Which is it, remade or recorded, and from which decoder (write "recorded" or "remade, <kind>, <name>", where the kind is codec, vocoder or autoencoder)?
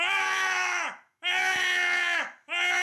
remade, autoencoder, DAC-VAE